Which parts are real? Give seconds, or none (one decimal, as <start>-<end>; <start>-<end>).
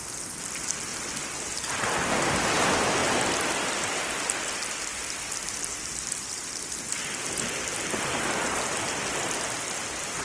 0.0-10.2